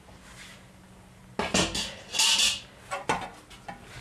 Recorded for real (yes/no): yes